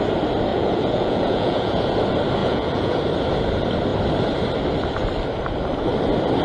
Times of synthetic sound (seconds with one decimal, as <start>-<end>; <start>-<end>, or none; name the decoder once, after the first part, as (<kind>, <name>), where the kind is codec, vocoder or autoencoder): 0.5-1.8 (vocoder, Vocos); 2.4-2.9